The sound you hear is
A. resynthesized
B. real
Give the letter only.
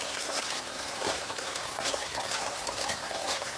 A